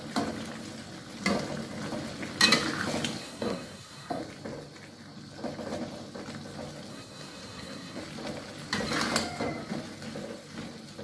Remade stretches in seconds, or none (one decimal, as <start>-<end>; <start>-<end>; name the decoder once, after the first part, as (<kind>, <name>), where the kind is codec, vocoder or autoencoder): 3.2-4.2 (codec, SNAC); 6.9-8.0